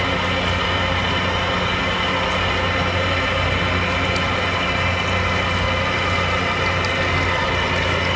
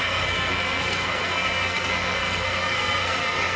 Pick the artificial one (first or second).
second